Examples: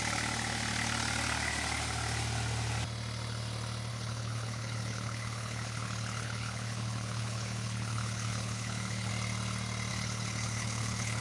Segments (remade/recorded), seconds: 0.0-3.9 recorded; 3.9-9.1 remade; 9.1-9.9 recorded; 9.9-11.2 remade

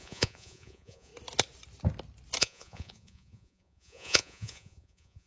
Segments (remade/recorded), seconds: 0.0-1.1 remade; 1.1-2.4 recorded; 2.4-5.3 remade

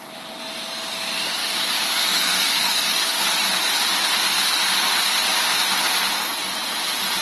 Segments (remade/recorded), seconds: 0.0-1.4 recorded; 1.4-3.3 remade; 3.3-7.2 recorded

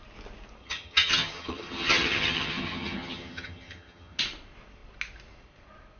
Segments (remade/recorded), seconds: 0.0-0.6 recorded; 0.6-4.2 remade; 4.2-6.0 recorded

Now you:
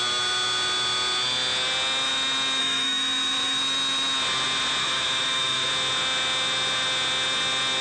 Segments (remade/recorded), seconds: 0.0-2.6 recorded; 2.6-3.6 remade; 3.6-4.8 recorded; 4.8-5.7 remade; 5.7-7.8 recorded

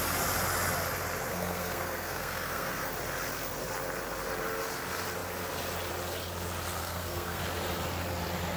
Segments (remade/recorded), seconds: 0.0-1.3 recorded; 1.3-2.9 remade; 2.9-6.8 recorded; 6.8-7.4 remade; 7.4-8.6 recorded

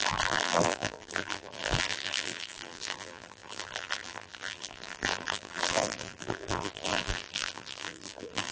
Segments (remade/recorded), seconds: 0.0-8.5 remade

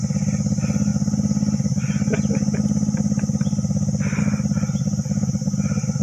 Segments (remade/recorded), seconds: 0.0-6.0 recorded